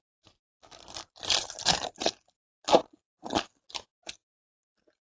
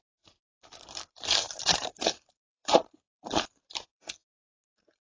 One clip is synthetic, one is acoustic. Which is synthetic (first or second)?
second